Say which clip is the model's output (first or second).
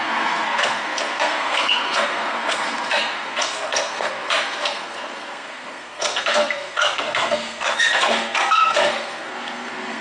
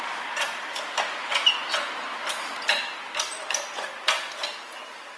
first